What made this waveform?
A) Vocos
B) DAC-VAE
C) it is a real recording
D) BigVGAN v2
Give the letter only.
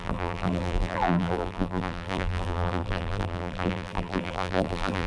D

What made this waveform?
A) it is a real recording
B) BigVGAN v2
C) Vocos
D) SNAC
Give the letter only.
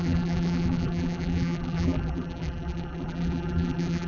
B